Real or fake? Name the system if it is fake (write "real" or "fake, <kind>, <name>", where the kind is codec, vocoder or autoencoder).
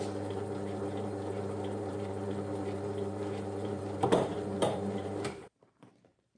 fake, vocoder, BigVGAN v2